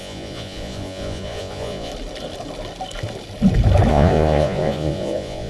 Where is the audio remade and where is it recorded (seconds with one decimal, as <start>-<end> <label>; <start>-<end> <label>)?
0.0-1.9 remade; 1.9-3.9 recorded; 3.9-5.5 remade